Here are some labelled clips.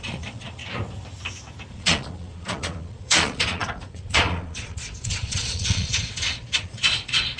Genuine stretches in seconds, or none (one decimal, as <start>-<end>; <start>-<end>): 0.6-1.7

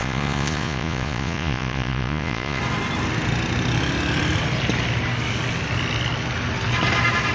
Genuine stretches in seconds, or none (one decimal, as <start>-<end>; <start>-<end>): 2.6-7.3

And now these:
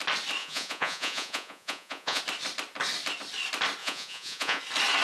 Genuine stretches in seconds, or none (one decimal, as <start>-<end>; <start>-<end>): 0.0-0.4; 2.2-3.8; 4.6-5.0

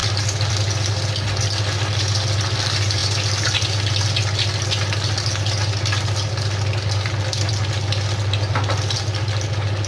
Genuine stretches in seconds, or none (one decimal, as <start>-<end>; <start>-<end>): 0.0-9.9

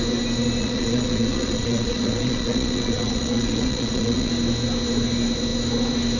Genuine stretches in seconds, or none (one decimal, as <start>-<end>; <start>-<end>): 0.0-0.6; 4.3-6.2